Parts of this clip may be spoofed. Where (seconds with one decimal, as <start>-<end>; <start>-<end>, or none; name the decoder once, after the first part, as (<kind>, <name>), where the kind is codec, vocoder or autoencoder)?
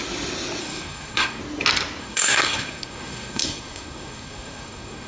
0.6-1.4 (codec, SNAC); 2.0-5.1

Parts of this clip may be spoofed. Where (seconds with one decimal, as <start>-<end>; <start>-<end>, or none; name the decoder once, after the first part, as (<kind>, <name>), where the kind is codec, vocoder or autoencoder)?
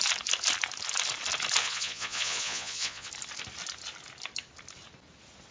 1.6-3.1 (vocoder, Vocos)